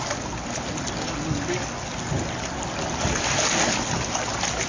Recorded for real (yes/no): yes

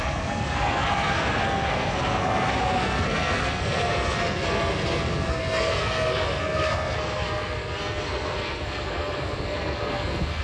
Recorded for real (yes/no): no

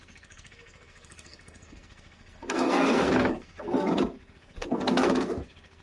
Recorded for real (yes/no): no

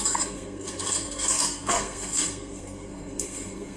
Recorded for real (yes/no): no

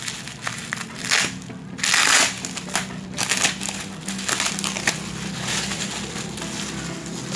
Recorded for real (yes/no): yes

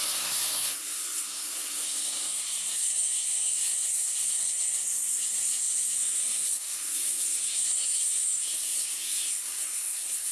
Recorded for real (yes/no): no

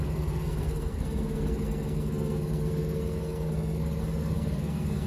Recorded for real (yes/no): no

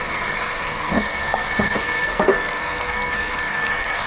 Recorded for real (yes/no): no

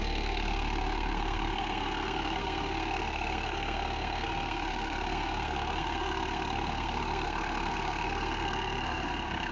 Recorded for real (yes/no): no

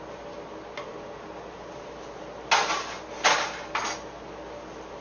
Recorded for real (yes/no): yes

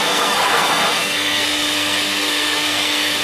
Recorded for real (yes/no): no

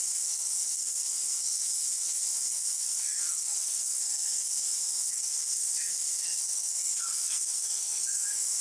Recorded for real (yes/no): no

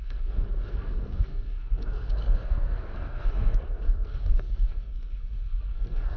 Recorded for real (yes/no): no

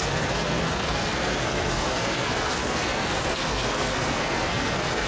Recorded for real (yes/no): no